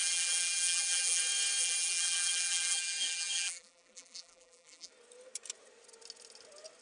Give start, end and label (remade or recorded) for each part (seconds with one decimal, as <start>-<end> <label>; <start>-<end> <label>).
0.0-1.2 remade; 1.2-1.6 recorded; 1.6-4.9 remade; 4.9-6.8 recorded